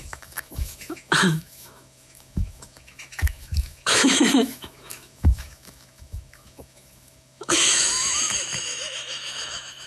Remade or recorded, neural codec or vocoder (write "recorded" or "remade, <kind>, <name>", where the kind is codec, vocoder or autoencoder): remade, autoencoder, DAC-VAE